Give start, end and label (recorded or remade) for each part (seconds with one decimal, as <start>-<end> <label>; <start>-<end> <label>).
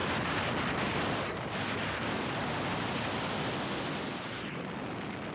0.0-5.3 recorded